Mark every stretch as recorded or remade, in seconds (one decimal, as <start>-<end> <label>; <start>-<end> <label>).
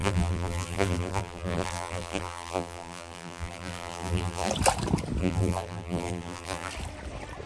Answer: 0.0-4.5 remade; 4.5-5.2 recorded; 5.2-6.7 remade; 6.7-7.5 recorded